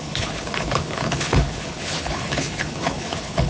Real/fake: fake